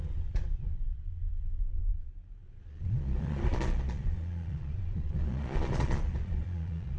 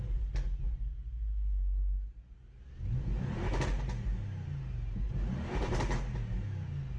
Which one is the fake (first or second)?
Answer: first